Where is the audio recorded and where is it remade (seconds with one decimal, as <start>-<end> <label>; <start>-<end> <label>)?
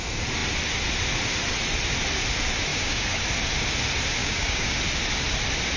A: 0.0-2.7 recorded; 2.7-3.2 remade; 3.2-4.2 recorded; 4.2-4.8 remade; 4.8-5.8 recorded